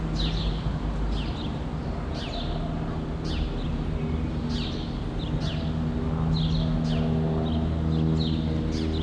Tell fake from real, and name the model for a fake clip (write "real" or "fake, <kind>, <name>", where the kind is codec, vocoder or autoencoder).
real